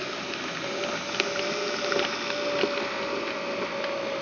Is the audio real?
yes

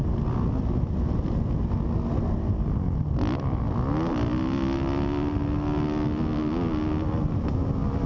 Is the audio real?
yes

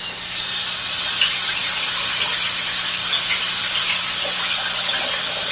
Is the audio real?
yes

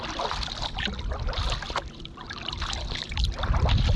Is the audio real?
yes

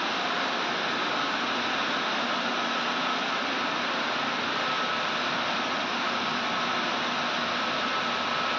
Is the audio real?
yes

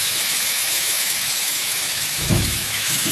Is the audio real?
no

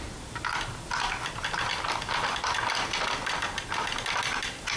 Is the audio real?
yes